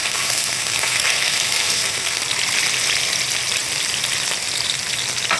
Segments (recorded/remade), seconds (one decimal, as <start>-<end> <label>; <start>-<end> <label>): 0.0-2.2 remade; 2.2-5.4 recorded